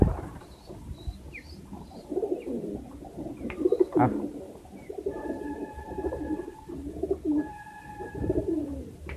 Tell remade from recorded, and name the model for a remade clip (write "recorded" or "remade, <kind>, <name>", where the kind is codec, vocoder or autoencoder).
remade, vocoder, BigVGAN v2